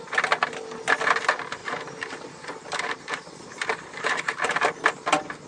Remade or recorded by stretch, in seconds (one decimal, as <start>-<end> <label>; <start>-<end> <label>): 0.0-1.6 recorded; 1.6-4.9 remade; 4.9-5.5 recorded